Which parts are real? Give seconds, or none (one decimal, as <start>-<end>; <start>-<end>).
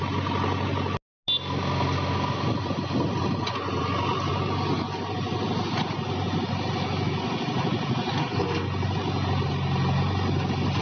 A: 0.0-10.8